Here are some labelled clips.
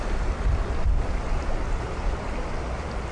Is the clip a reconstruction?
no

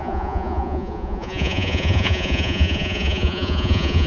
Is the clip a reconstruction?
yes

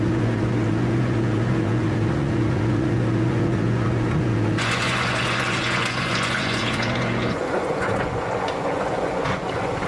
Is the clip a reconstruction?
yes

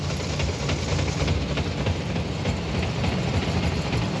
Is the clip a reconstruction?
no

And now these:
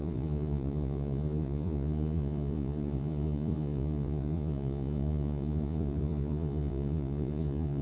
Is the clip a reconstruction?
yes